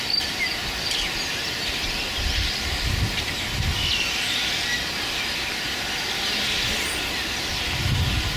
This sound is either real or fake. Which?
real